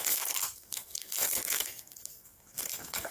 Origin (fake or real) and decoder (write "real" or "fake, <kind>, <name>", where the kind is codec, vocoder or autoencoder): fake, codec, SNAC